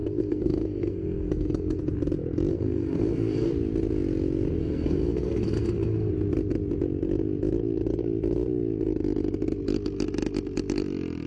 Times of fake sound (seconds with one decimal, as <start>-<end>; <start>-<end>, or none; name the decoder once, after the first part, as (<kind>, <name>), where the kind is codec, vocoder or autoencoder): 0.0-1.8 (codec, SNAC); 2.5-3.5; 4.6-6.1